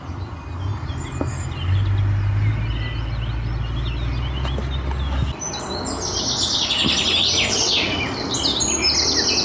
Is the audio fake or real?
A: real